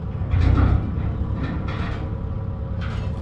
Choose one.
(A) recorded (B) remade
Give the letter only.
A